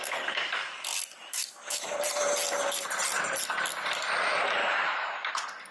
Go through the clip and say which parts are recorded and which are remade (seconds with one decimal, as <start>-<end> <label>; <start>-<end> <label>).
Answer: 0.0-1.2 recorded; 1.2-1.9 remade; 1.9-4.6 recorded; 4.6-5.3 remade; 5.3-5.7 recorded